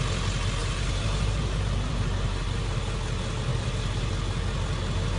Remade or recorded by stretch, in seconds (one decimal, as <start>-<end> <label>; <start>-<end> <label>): 0.0-0.6 recorded; 0.6-2.8 remade; 2.8-3.5 recorded; 3.5-4.1 remade; 4.1-5.2 recorded